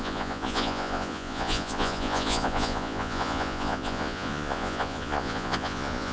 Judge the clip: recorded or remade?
remade